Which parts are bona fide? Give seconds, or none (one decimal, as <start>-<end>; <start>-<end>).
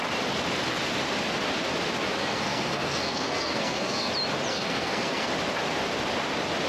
0.0-2.2; 4.1-4.5; 5.3-6.7